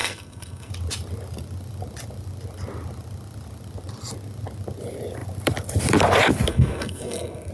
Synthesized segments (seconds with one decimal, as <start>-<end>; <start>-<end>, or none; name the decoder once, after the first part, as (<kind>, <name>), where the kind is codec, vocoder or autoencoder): 0.0-0.7 (codec, SNAC); 6.5-7.5